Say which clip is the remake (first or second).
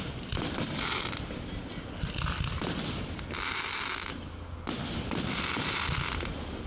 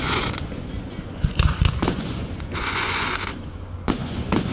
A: second